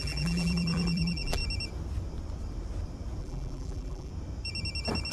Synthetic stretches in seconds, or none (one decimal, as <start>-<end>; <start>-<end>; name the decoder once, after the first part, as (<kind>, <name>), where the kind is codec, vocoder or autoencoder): 0.0-1.4 (vocoder, BigVGAN v2); 3.2-4.1